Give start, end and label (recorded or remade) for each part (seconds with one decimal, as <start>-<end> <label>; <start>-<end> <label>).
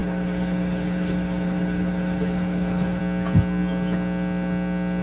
0.0-3.0 remade; 3.0-5.0 recorded